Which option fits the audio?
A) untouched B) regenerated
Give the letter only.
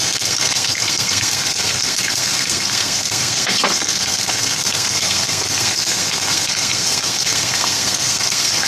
B